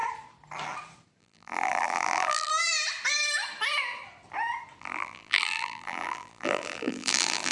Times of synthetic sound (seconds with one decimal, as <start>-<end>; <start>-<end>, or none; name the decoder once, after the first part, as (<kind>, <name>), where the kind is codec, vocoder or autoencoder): 1.2-2.5 (vocoder, BigVGAN v2); 4.8-7.5